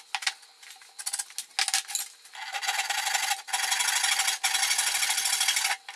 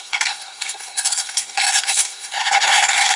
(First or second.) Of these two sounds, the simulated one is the second